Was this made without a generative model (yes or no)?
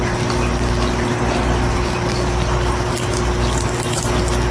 yes